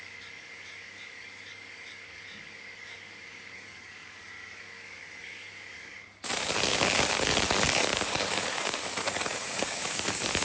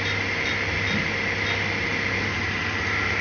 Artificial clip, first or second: first